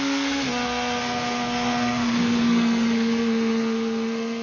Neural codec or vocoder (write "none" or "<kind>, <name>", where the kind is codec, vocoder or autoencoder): codec, SNAC